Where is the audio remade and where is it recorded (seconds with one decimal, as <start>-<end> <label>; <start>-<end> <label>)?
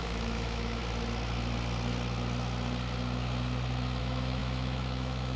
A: 0.0-0.8 remade; 0.8-4.0 recorded; 4.0-5.4 remade